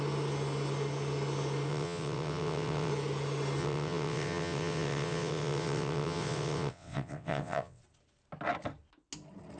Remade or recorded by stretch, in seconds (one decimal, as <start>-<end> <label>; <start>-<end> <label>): 0.0-1.7 recorded; 1.7-2.9 remade; 2.9-3.6 recorded; 3.6-7.8 remade; 7.8-9.6 recorded